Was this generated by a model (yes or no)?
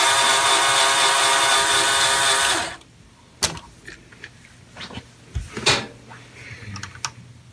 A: no